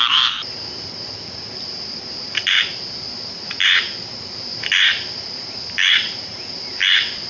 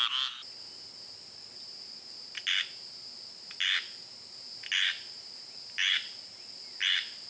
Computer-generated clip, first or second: first